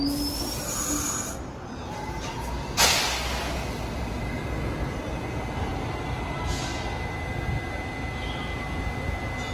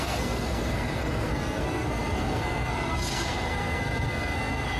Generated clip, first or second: second